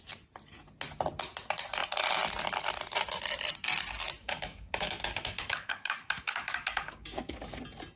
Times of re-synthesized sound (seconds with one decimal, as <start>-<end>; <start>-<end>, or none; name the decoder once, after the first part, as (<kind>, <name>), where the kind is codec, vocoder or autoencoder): 4.2-7.6 (codec, DAC)